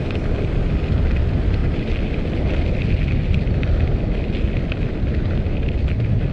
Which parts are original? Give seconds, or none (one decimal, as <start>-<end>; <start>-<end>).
0.0-6.3